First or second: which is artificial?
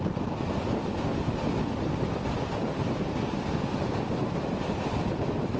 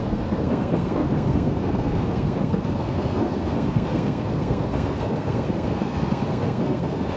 second